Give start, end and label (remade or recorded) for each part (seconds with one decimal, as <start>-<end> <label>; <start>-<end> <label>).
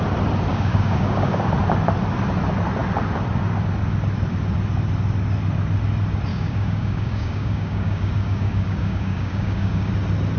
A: 0.0-0.5 recorded; 0.5-1.4 remade; 1.4-6.3 recorded; 6.3-9.9 remade; 9.9-10.4 recorded